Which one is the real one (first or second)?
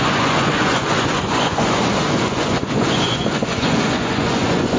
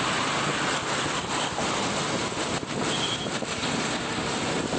second